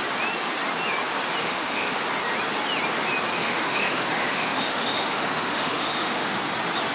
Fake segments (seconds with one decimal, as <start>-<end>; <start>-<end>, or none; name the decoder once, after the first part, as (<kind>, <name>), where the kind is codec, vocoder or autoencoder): 1.4-2.0 (autoencoder, DAC-VAE); 3.4-6.4